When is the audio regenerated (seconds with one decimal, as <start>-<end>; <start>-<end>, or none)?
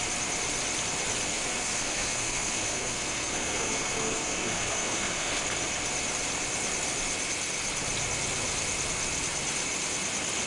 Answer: 1.3-5.4